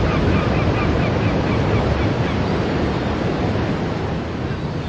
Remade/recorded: recorded